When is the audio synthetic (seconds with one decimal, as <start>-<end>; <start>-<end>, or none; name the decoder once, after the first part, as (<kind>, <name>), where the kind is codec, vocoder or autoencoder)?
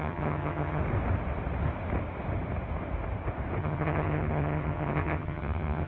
0.0-0.8 (vocoder, HiFi-GAN); 3.6-5.9